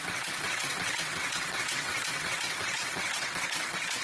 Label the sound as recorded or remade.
remade